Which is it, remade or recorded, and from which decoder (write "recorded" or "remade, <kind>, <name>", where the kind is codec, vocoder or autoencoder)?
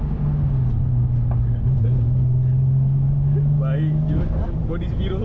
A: recorded